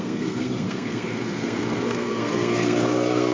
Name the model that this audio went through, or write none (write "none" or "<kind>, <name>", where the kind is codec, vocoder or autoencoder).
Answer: codec, SNAC